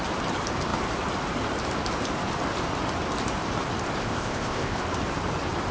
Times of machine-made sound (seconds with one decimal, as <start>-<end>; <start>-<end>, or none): 4.0-4.8